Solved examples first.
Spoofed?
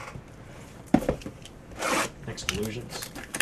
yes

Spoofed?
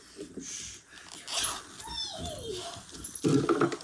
no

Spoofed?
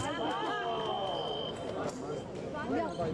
no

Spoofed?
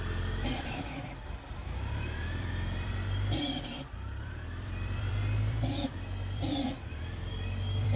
yes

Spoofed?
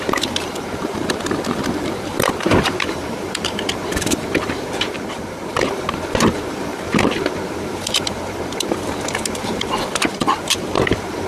yes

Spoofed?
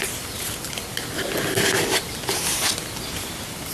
no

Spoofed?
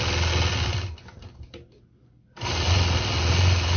no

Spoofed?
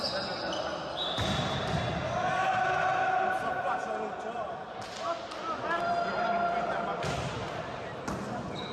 no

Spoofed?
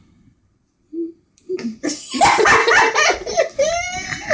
no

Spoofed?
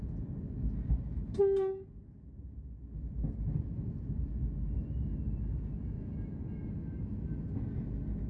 no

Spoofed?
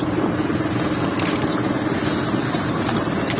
no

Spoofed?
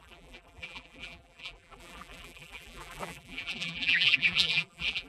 yes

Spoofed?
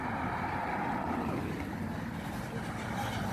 no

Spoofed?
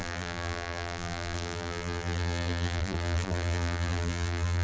yes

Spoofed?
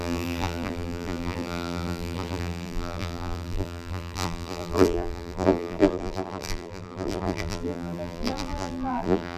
yes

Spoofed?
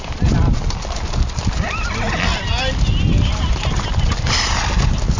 no